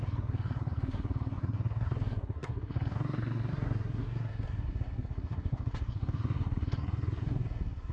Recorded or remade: remade